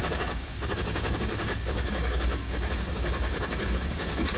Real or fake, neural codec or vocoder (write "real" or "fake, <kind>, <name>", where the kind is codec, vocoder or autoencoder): fake, codec, DAC